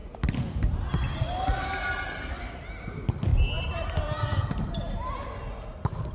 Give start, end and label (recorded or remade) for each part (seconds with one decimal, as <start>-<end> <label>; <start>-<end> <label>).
0.0-3.3 recorded; 3.3-5.2 remade; 5.2-6.1 recorded